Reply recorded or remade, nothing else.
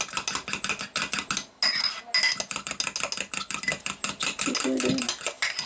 recorded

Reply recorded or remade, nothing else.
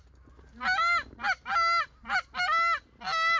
recorded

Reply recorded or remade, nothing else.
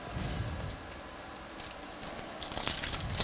recorded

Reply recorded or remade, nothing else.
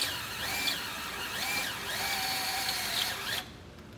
recorded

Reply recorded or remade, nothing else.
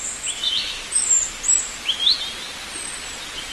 recorded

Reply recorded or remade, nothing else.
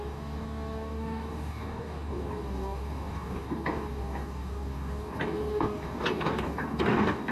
remade